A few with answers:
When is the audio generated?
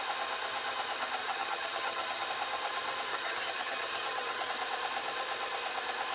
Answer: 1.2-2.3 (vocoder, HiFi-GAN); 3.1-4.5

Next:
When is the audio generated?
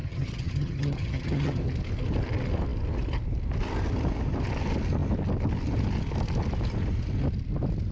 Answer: 0.0-1.6 (vocoder, HiFi-GAN)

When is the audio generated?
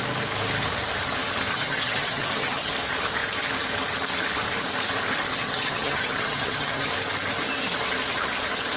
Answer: 1.5-2.7 (vocoder, HiFi-GAN); 5.3-6.9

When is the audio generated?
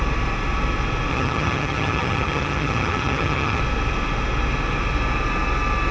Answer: 1.1-3.6 (vocoder, HiFi-GAN)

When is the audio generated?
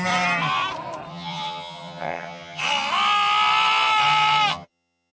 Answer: 1.1-2.6 (vocoder, HiFi-GAN); 4.5-5.1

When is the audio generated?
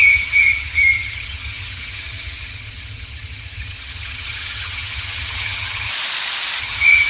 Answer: 0.0-5.9 (vocoder, HiFi-GAN); 6.6-7.1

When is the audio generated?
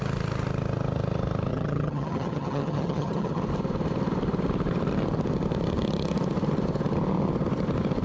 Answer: 1.5-3.4 (vocoder, HiFi-GAN)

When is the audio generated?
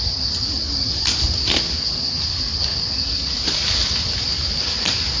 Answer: none